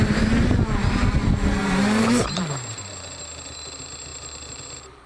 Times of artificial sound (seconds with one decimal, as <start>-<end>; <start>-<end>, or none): 1.6-2.9; 4.1-4.6